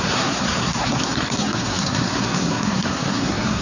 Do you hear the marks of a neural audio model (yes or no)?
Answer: yes